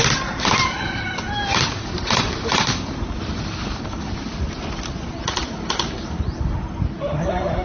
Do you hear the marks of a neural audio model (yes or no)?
yes